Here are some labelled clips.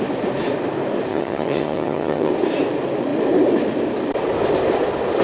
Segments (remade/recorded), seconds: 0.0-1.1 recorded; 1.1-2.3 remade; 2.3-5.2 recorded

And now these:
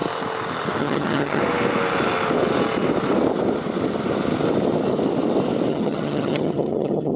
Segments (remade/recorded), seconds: 0.0-0.8 recorded; 0.8-1.4 remade; 1.4-5.7 recorded; 5.7-7.2 remade

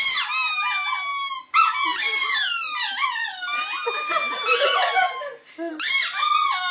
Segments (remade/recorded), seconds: 0.0-6.7 recorded